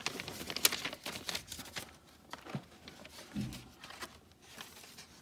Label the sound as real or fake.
real